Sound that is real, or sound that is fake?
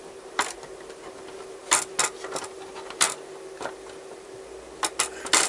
real